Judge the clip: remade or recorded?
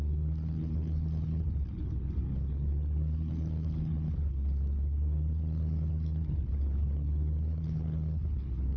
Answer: remade